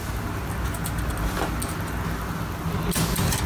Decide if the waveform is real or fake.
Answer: real